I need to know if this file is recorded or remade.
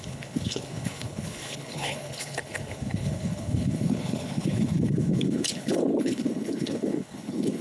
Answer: remade